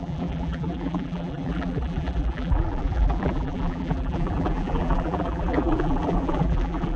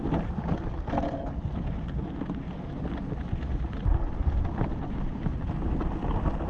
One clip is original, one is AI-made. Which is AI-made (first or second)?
first